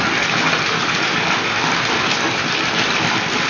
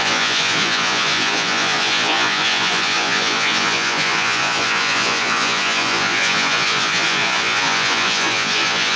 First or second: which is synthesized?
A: second